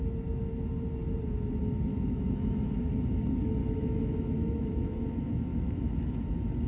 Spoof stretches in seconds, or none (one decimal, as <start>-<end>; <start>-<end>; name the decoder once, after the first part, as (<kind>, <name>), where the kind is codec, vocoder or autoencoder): 1.9-2.8 (autoencoder, DAC-VAE); 3.6-5.0; 5.5-6.1